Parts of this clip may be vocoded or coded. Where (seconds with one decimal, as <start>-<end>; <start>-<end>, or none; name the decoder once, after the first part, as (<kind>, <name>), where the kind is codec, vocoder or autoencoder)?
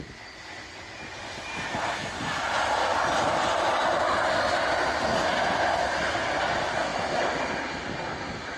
none